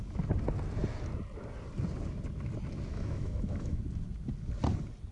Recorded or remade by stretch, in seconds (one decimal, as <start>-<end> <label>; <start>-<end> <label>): 0.0-2.9 recorded; 2.9-3.8 remade; 3.8-5.1 recorded